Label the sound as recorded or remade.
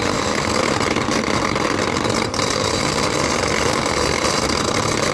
remade